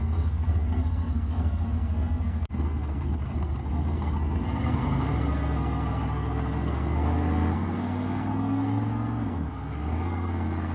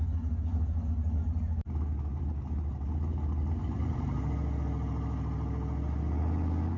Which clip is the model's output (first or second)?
first